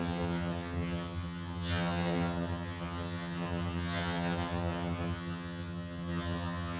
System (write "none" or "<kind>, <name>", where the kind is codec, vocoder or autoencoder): vocoder, HiFi-GAN